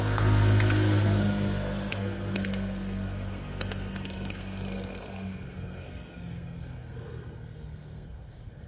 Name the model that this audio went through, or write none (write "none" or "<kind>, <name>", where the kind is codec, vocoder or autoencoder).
codec, SNAC